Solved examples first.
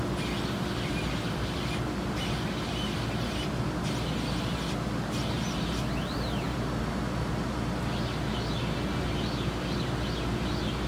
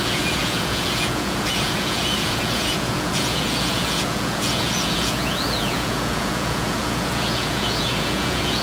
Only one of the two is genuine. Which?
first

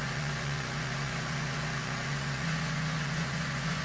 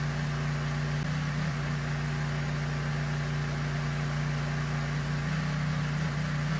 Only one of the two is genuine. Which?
second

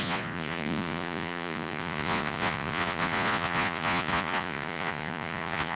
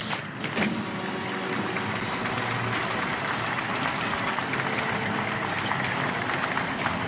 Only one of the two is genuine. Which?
second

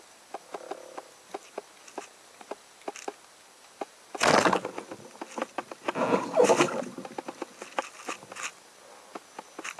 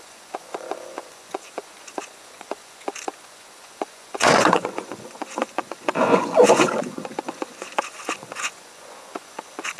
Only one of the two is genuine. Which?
first